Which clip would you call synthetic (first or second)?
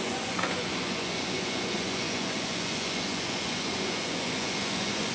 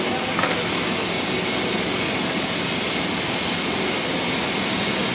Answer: first